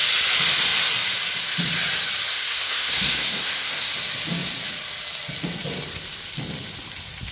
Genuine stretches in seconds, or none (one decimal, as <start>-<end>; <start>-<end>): 0.0-2.3; 3.9-7.3